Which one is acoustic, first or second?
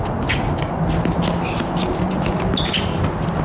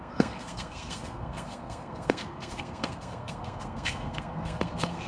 first